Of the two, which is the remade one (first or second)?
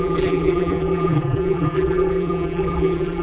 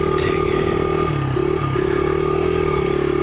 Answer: first